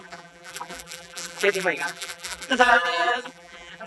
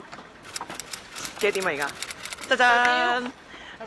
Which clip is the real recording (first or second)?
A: second